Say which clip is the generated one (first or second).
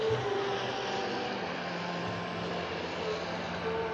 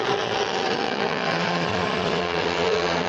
second